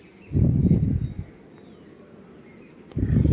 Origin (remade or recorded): recorded